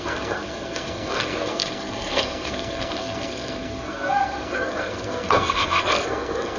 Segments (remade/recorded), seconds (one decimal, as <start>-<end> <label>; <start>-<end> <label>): 0.0-6.6 remade